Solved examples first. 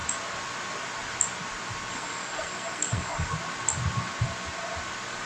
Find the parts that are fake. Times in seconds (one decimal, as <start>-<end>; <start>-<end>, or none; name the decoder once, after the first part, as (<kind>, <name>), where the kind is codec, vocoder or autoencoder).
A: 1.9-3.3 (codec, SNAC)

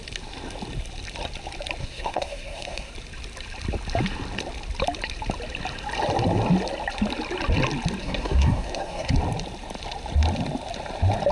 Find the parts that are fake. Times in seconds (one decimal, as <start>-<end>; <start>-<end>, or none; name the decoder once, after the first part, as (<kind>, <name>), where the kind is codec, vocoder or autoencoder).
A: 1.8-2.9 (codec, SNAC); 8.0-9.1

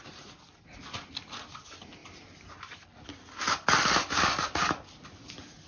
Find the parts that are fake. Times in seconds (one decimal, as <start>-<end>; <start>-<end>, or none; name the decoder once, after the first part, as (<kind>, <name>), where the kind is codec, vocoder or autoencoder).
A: none

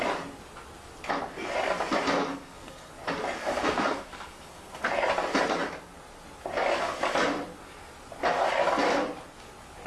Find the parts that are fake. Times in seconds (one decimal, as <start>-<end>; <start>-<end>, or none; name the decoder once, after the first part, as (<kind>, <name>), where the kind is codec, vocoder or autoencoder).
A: 2.3-2.9 (codec, SNAC); 3.4-4.9

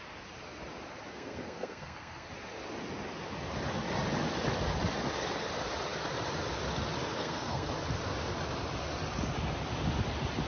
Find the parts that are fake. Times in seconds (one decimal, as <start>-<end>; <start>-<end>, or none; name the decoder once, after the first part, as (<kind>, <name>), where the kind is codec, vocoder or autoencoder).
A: 1.1-2.3 (codec, SNAC); 7.2-7.7

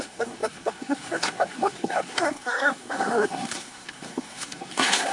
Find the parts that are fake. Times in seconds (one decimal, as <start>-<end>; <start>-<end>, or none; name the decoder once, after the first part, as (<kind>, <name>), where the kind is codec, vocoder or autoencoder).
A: 0.0-5.1 (codec, SNAC)